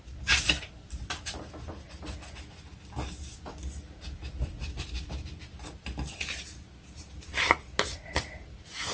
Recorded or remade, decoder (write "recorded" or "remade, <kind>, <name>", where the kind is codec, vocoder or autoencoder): recorded